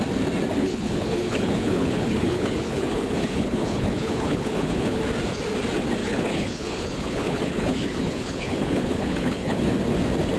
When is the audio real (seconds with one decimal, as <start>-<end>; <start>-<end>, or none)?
0.0-0.6; 5.0-6.0; 9.7-10.4